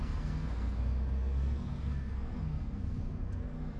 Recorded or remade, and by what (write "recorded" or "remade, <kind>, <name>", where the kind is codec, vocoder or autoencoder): remade, codec, SNAC